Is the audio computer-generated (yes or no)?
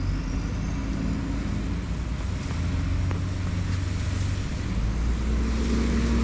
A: no